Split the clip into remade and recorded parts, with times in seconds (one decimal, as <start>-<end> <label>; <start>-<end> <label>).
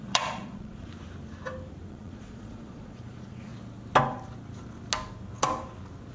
0.0-0.9 remade; 0.9-1.9 recorded; 1.9-3.5 remade; 3.5-6.1 recorded